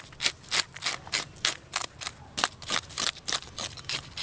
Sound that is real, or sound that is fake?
real